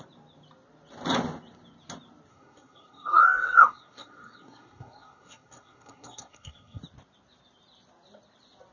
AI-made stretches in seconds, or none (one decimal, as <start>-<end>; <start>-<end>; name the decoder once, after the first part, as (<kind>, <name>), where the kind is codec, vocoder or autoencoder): 2.3-6.8 (codec, SNAC)